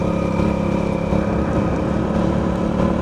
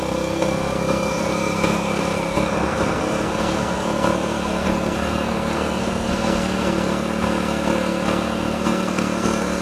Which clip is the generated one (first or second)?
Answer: second